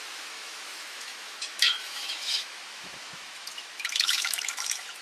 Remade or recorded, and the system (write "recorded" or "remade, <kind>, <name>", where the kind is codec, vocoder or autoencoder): remade, autoencoder, DAC-VAE